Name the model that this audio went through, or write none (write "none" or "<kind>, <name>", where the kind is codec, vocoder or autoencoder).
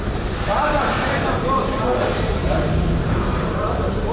vocoder, BigVGAN v2